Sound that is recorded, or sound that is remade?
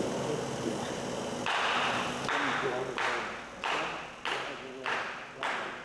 recorded